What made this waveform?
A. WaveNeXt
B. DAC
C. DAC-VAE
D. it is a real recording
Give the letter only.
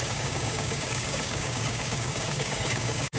B